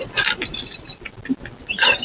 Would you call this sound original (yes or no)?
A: yes